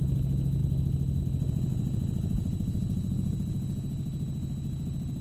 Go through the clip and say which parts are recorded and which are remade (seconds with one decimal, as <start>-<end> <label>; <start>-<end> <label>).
0.0-5.2 recorded